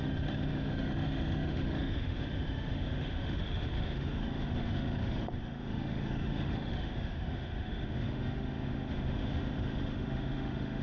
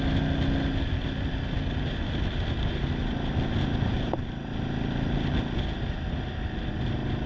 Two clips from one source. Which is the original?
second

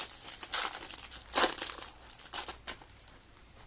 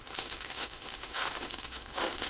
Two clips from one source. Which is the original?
first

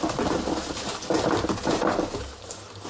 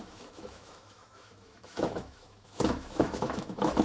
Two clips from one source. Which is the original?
first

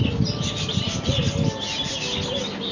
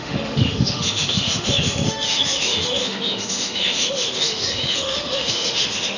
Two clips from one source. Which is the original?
first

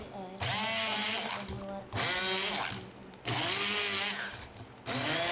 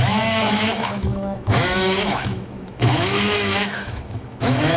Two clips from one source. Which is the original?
first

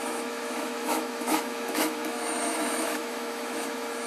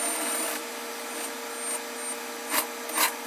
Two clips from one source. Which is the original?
second